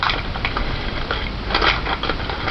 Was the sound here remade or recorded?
recorded